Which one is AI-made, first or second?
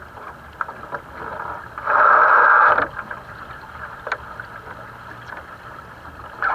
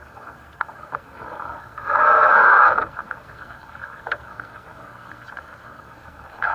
second